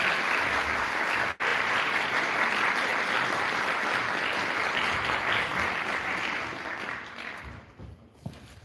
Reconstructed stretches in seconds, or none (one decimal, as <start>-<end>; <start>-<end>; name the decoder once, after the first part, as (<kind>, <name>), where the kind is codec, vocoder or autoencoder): 1.5-2.5 (vocoder, BigVGAN v2); 5.5-7.7